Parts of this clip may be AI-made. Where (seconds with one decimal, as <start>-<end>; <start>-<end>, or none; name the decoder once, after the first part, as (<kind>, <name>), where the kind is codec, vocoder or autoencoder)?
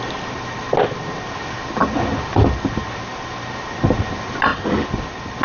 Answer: none